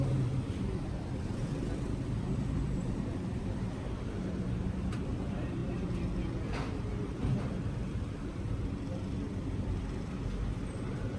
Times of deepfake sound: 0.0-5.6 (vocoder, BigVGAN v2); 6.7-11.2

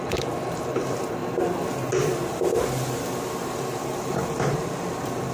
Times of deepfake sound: 0.0-1.2 (vocoder, BigVGAN v2); 3.4-5.3

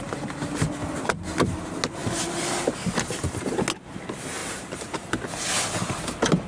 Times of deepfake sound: 0.8-1.4 (vocoder, BigVGAN v2); 4.4-5.2

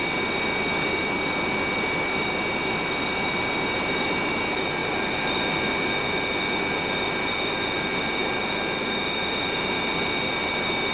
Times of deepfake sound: none

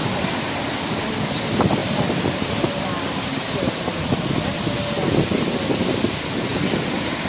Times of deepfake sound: 0.0-1.1 (vocoder, BigVGAN v2); 1.8-2.7

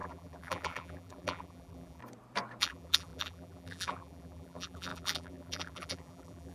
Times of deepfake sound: 0.0-2.0 (vocoder, BigVGAN v2); 2.6-6.5

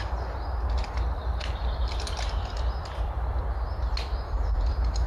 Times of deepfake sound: 2.8-3.4 (vocoder, BigVGAN v2)

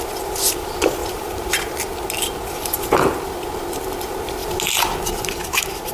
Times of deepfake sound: 1.0-1.7 (vocoder, BigVGAN v2)